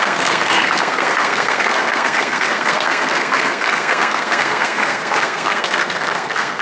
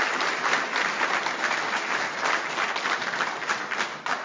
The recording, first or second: second